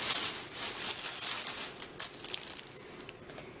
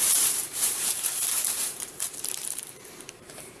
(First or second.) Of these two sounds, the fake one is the second